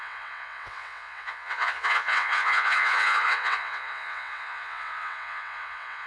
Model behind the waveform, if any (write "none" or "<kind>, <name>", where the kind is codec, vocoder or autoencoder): vocoder, WaveNeXt